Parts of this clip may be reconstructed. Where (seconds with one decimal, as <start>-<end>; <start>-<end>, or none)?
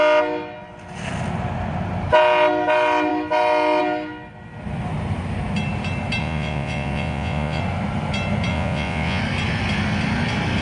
6.2-7.6; 8.5-9.2